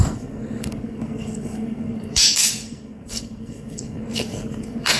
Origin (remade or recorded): remade